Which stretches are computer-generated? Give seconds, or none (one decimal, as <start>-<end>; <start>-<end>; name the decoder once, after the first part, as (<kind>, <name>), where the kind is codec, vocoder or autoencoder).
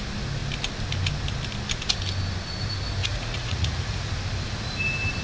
3.0-4.1 (vocoder, Vocos)